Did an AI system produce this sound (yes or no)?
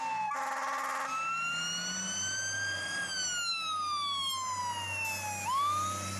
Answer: no